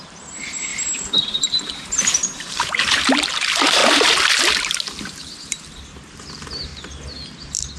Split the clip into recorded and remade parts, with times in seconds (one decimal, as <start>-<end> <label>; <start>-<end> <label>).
0.0-3.8 remade; 3.8-5.1 recorded; 5.1-6.7 remade; 6.7-7.3 recorded; 7.3-7.8 remade